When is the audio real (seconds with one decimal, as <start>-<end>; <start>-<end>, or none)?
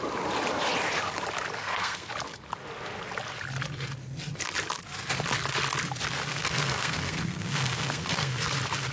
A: 0.0-1.6; 2.1-6.3; 8.5-8.9